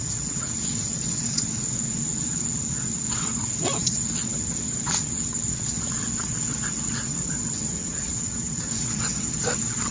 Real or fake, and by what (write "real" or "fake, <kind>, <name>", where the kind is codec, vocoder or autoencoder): fake, vocoder, WaveNeXt